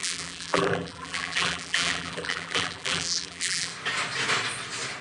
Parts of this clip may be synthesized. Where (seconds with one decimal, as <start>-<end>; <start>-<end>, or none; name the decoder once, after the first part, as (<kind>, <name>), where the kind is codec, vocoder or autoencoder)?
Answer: 0.0-3.7 (vocoder, BigVGAN v2)